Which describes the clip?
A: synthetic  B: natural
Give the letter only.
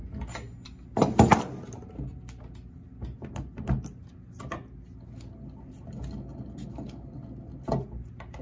B